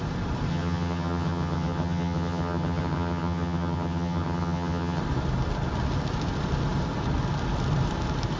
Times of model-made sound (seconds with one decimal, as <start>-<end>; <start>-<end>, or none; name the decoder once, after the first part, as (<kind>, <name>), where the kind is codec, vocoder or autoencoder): 0.5-5.0 (vocoder, HiFi-GAN)